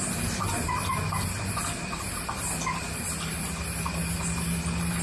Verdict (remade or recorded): recorded